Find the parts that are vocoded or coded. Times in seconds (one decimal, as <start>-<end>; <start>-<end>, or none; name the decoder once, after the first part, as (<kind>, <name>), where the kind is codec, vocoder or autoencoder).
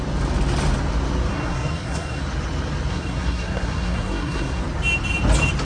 1.3-2.2 (codec, SNAC); 2.9-4.6